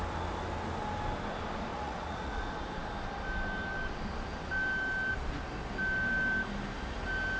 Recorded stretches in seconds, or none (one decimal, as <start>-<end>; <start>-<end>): 0.0-1.7; 2.4-7.4